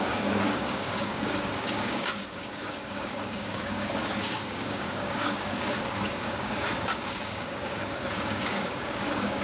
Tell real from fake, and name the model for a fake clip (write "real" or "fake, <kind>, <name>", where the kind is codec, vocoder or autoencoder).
fake, codec, DAC